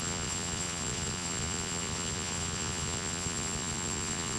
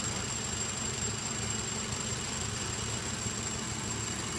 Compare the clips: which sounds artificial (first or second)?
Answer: first